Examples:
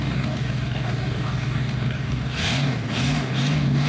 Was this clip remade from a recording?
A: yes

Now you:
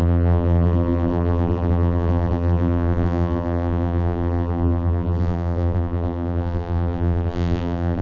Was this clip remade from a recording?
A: yes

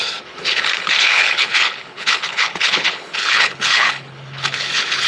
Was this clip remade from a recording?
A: yes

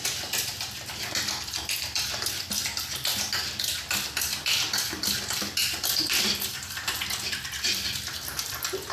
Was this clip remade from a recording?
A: yes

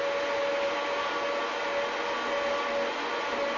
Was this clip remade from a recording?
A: no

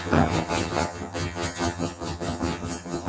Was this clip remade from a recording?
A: yes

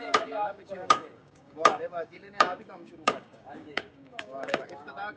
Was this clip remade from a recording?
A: yes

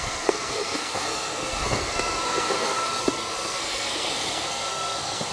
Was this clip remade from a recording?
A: yes